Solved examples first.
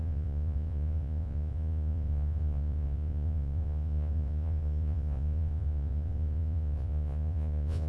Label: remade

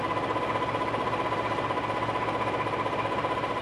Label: recorded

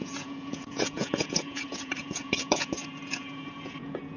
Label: remade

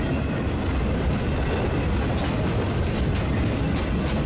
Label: recorded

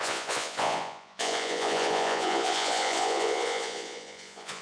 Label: remade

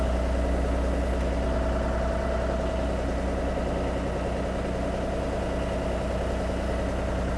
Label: recorded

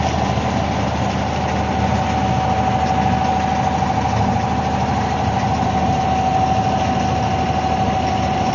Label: recorded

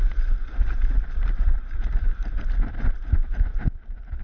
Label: recorded